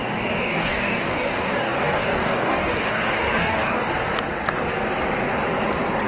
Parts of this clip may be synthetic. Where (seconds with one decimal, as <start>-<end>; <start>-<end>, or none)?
0.0-3.9